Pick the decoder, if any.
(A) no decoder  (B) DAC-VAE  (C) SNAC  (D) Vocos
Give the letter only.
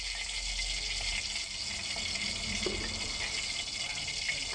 A